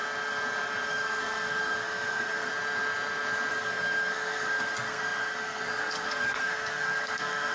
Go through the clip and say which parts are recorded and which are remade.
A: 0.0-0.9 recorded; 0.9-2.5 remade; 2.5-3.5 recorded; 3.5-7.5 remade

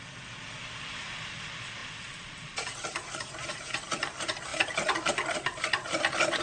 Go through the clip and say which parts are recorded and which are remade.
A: 0.0-6.4 recorded

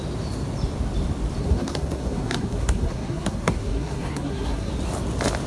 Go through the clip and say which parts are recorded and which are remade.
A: 0.0-1.4 recorded; 1.4-4.7 remade; 4.7-5.5 recorded

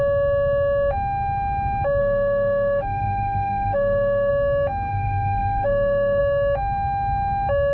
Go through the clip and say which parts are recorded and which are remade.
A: 0.0-2.0 recorded; 2.0-4.3 remade; 4.3-4.9 recorded; 4.9-6.2 remade; 6.2-7.7 recorded

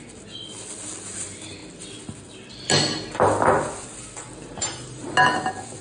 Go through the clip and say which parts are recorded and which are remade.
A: 0.0-5.8 recorded

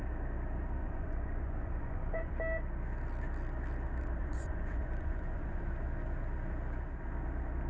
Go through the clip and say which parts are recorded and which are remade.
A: 0.0-0.8 recorded; 0.8-2.3 remade; 2.3-4.2 recorded; 4.2-5.6 remade; 5.6-7.7 recorded

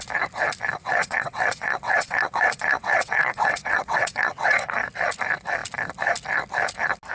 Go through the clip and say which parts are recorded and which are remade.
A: 0.0-0.8 recorded; 0.8-4.7 remade; 4.7-7.1 recorded